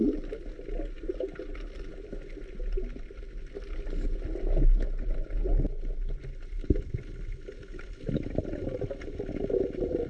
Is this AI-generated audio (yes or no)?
no